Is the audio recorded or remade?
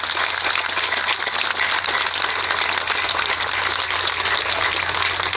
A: recorded